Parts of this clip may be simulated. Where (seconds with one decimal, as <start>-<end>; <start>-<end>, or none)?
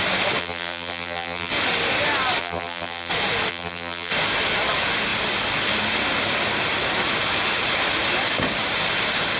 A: 0.4-1.5; 2.4-3.1; 3.5-4.1